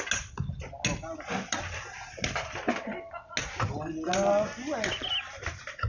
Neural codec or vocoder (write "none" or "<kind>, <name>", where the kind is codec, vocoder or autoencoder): none